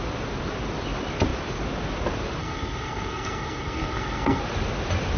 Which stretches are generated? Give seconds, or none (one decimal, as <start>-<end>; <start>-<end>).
2.4-4.4